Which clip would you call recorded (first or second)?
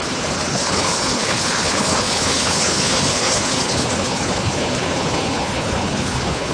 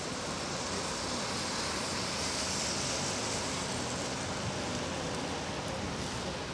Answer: second